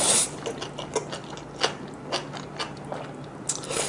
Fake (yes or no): no